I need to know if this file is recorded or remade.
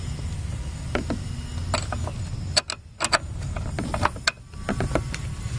recorded